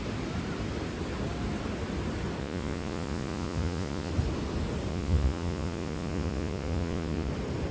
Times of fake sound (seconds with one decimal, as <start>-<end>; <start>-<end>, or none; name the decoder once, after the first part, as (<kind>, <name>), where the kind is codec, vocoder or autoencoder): 2.4-4.1 (vocoder, Vocos); 4.9-7.3